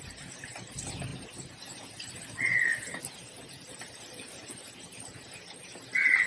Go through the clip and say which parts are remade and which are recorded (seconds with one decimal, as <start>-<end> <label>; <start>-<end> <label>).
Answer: 0.0-6.3 recorded